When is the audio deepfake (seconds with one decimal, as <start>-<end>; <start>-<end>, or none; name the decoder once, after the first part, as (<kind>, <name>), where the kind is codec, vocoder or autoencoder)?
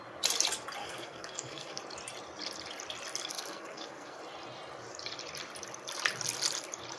0.8-1.8 (codec, SNAC); 3.3-4.2